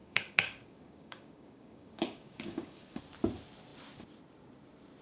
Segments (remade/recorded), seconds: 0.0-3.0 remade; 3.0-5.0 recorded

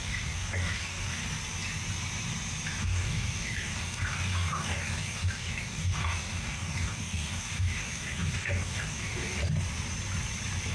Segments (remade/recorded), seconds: 0.0-1.2 remade; 1.2-2.8 recorded; 2.8-9.4 remade; 9.4-10.7 recorded

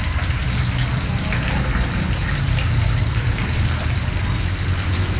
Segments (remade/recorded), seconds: 0.0-5.2 recorded

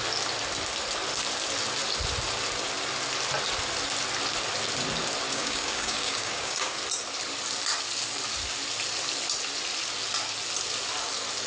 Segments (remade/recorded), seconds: 0.0-5.3 recorded; 5.3-6.8 remade; 6.8-11.5 recorded

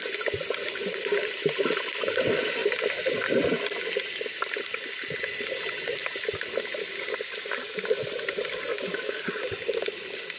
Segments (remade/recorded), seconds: 0.0-8.7 recorded; 8.7-9.3 remade; 9.3-10.4 recorded

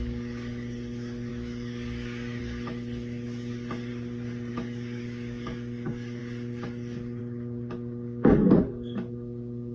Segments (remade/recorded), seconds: 0.0-3.9 remade; 3.9-4.5 recorded; 4.5-9.7 remade